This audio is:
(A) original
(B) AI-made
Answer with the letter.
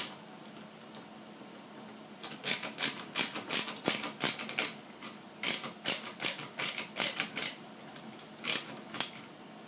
A